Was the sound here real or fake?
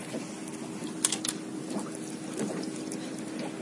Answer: real